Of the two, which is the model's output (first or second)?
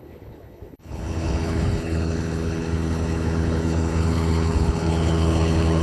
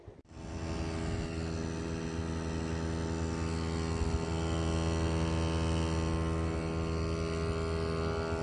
first